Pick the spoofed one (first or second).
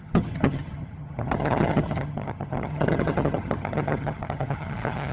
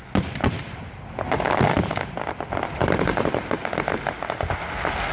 first